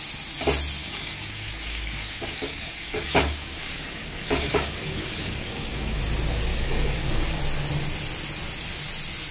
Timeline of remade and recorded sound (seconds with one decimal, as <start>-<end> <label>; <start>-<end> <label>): 0.0-0.8 recorded; 0.8-6.0 remade; 6.0-6.5 recorded; 6.5-7.4 remade; 7.4-9.3 recorded